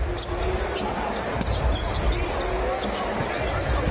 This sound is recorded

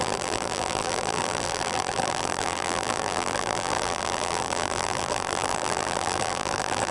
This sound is remade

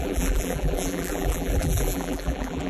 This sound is remade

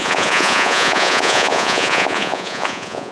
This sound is remade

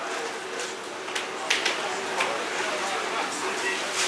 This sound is recorded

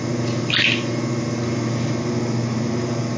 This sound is recorded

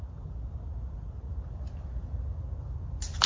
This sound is recorded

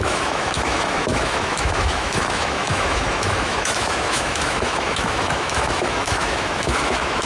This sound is remade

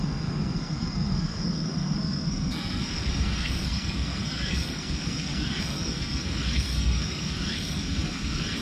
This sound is remade